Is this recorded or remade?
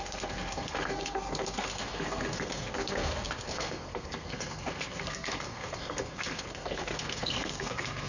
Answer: remade